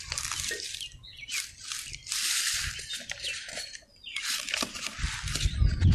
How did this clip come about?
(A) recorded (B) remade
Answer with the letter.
A